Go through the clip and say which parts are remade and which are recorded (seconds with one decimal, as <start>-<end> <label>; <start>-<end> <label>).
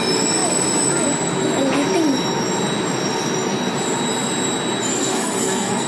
0.0-4.9 recorded; 4.9-5.9 remade